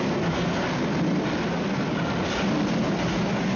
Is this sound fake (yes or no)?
no